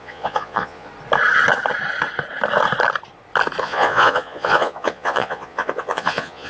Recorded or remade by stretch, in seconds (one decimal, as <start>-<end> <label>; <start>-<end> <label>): 0.0-0.9 remade; 0.9-3.6 recorded; 3.6-6.5 remade